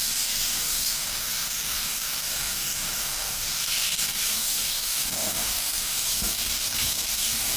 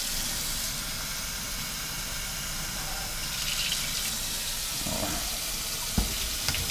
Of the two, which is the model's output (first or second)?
first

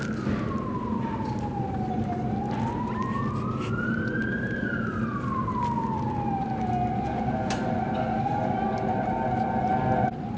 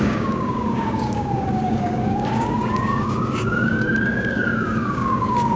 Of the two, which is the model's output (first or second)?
second